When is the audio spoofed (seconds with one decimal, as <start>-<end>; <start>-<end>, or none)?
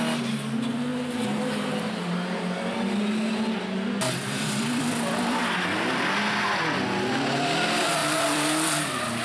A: 4.2-5.4; 8.0-9.2